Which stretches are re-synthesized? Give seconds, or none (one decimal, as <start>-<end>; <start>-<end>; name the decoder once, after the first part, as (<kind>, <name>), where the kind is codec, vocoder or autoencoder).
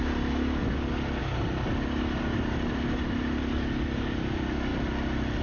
none